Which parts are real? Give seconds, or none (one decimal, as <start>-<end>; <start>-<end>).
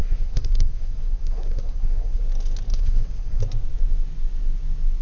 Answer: 2.2-2.7; 3.4-5.0